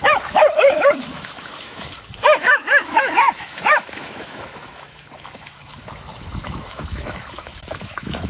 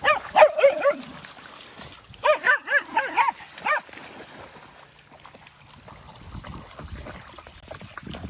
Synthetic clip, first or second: first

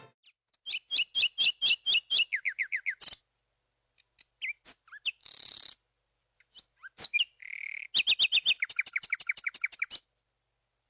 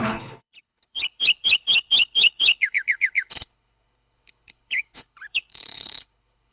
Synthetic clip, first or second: second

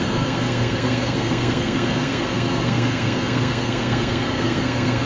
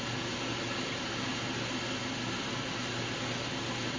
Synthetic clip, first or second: first